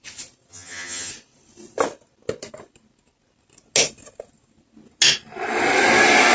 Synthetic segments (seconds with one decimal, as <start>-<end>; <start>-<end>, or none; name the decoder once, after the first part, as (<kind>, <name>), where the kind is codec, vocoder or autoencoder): 0.5-1.1 (vocoder, HiFi-GAN)